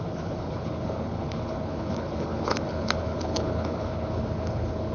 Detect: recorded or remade remade